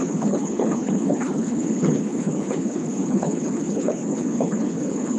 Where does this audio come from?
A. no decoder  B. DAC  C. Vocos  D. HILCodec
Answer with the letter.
D